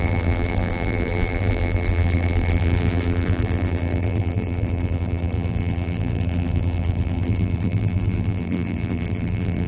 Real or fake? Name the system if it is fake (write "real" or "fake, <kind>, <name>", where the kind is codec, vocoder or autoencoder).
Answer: fake, vocoder, BigVGAN v2